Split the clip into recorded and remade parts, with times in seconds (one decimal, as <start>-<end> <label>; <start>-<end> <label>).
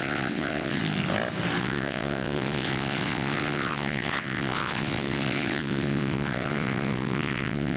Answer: 0.0-0.8 remade; 0.8-1.6 recorded; 1.6-7.8 remade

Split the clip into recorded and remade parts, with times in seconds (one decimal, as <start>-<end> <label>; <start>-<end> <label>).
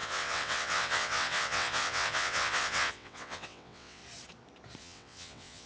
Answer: 0.0-4.0 remade; 4.0-4.8 recorded; 4.8-5.7 remade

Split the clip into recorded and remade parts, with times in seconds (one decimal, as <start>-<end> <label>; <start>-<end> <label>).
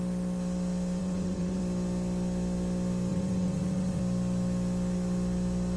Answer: 0.0-1.0 recorded; 1.0-1.6 remade; 1.6-3.1 recorded; 3.1-4.0 remade; 4.0-5.8 recorded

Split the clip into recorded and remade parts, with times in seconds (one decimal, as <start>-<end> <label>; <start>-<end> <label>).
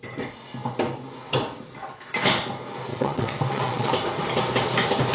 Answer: 0.0-2.9 recorded; 2.9-3.9 remade; 3.9-5.1 recorded